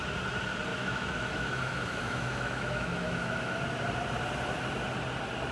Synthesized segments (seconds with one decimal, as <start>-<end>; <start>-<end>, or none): 0.7-3.6